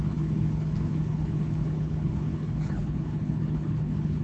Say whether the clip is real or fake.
fake